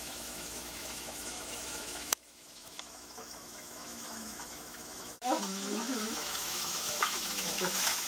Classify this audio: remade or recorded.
remade